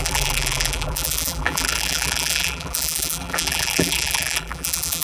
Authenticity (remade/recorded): remade